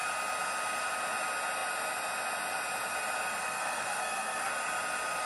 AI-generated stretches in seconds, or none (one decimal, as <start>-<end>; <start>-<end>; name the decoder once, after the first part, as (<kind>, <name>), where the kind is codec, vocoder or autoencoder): 3.4-4.5 (codec, SNAC)